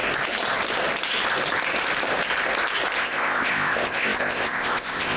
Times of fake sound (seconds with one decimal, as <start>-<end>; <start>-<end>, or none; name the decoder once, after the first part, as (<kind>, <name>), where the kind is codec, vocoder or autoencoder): 3.0-5.2 (codec, ZipCodec)